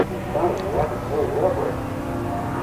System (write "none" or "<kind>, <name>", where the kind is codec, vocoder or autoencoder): none